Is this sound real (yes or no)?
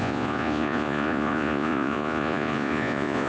no